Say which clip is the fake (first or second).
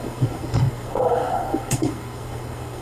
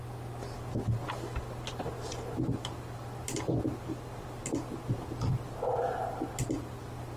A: first